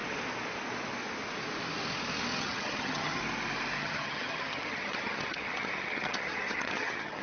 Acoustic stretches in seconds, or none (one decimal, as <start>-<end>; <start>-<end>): 0.0-2.3; 3.2-3.8